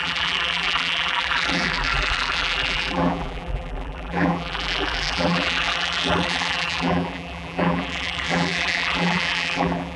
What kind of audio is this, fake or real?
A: fake